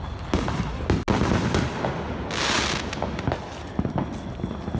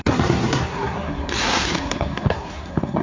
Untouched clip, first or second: first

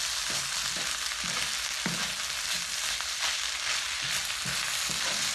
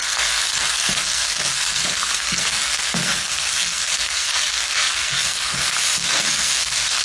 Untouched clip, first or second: first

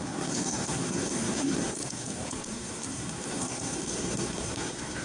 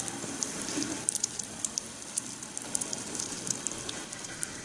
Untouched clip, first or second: second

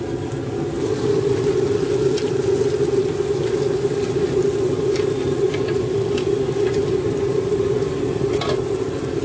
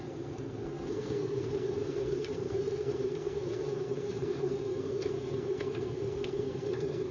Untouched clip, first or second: first